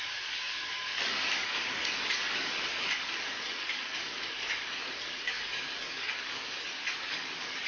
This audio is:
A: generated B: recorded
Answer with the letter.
A